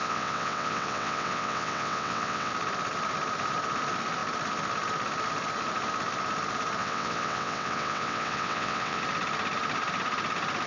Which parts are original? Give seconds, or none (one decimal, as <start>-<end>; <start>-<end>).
2.5-6.8; 9.0-10.7